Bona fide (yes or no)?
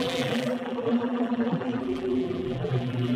no